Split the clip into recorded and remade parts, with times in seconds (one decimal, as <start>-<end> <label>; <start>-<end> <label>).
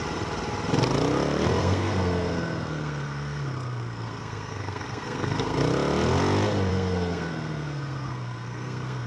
0.0-1.6 recorded; 1.6-5.6 remade; 5.6-6.7 recorded; 6.7-9.1 remade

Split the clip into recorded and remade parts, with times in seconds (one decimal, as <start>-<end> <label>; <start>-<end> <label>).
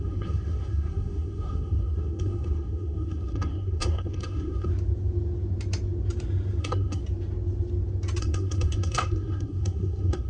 0.0-4.7 remade; 4.7-6.6 recorded; 6.6-7.0 remade; 7.0-8.2 recorded; 8.2-10.3 remade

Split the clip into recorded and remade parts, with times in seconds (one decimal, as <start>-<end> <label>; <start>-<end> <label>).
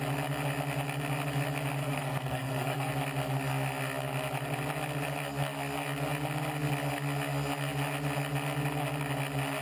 0.0-1.8 recorded; 1.8-2.9 remade; 2.9-9.6 recorded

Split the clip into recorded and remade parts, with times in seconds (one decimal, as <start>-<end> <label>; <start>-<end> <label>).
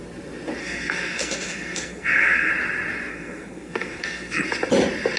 0.0-0.6 recorded; 0.6-2.5 remade; 2.5-3.1 recorded; 3.1-4.4 remade; 4.4-5.2 recorded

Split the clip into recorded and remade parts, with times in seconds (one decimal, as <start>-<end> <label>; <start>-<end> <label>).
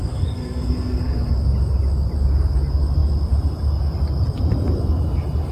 0.0-1.3 remade; 1.3-5.5 recorded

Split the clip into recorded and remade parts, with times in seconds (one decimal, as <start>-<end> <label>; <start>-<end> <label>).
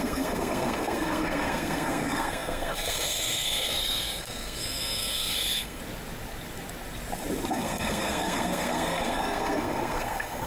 0.0-5.8 remade; 5.8-7.5 recorded; 7.5-10.5 remade